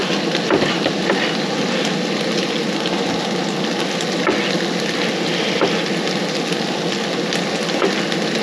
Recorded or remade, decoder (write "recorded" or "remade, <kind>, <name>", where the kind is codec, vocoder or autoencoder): recorded